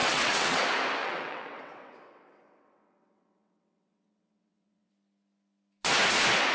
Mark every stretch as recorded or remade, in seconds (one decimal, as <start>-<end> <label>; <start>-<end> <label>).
0.0-0.6 remade; 0.6-1.0 recorded; 1.0-4.9 remade; 4.9-6.5 recorded